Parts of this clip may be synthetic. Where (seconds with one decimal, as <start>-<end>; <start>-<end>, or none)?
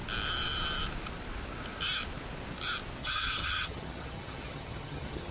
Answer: 3.0-5.3